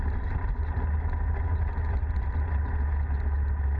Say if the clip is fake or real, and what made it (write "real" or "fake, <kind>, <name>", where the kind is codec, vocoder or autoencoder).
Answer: real